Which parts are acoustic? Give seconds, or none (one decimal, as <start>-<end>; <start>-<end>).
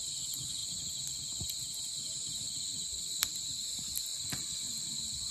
0.0-5.3